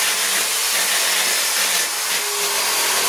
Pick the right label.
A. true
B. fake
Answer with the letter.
A